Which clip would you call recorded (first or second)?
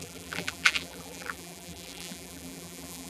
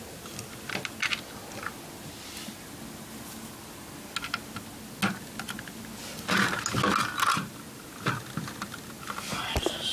second